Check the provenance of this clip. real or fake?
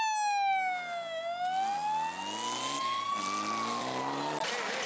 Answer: real